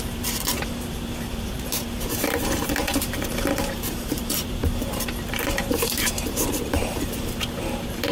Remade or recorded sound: remade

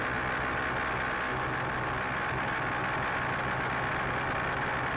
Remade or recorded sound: recorded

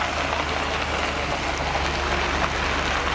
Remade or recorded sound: recorded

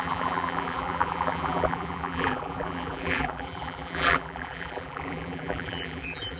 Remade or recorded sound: remade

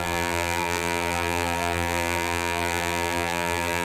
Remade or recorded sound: remade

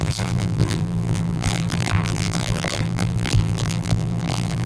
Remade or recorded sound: remade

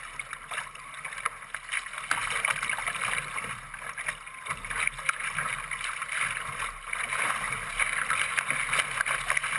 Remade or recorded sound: recorded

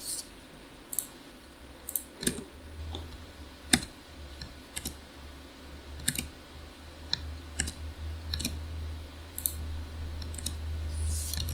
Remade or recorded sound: recorded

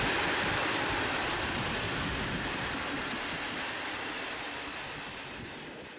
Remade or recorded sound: remade